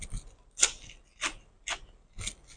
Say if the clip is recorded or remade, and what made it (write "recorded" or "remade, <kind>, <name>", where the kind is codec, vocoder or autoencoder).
recorded